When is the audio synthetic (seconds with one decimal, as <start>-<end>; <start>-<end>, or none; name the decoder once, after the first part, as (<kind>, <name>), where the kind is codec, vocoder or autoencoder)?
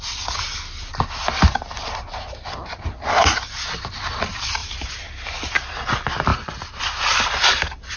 none